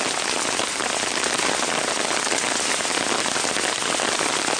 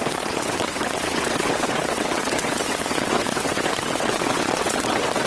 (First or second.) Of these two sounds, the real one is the first